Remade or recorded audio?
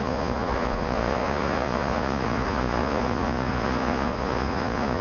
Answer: remade